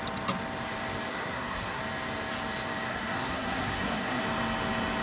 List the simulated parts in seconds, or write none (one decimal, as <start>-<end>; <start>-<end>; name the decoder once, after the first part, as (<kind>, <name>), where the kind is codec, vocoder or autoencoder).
1.1-1.8 (codec, SNAC); 2.9-4.2